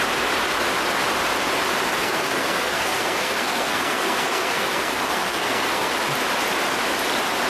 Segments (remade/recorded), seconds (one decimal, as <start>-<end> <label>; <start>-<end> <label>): 0.0-1.9 recorded; 1.9-5.9 remade; 5.9-7.5 recorded